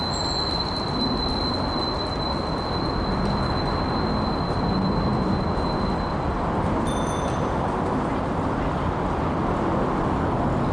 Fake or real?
real